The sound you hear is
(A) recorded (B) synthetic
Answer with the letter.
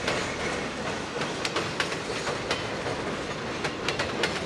A